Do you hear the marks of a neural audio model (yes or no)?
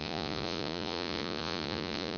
yes